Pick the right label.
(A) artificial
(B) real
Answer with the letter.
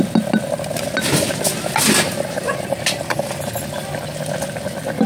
B